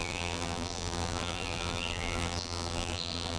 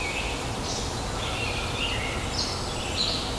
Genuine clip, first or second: second